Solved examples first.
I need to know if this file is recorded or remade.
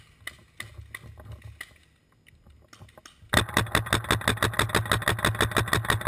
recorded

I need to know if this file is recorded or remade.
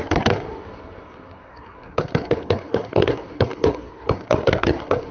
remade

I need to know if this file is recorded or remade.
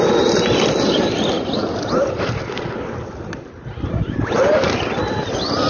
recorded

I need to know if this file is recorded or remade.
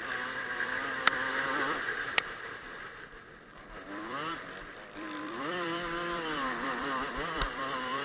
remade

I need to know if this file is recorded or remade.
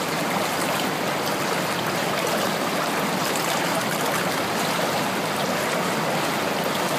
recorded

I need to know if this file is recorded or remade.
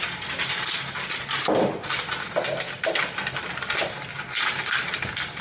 recorded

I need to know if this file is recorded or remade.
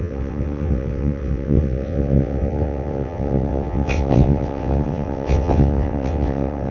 remade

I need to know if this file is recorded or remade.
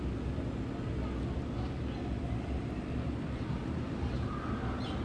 recorded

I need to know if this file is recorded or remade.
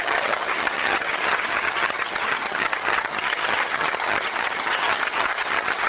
remade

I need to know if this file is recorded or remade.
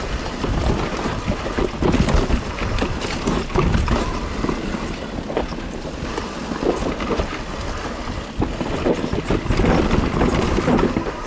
recorded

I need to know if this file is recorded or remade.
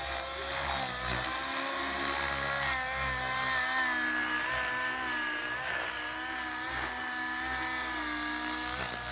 recorded